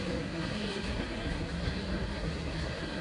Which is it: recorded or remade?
remade